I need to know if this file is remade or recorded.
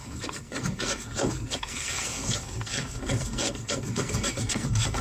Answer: remade